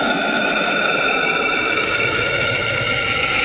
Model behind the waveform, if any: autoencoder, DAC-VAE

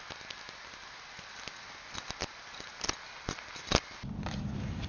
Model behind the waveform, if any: none